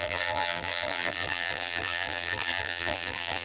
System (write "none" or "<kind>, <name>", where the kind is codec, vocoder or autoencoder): vocoder, BigVGAN v2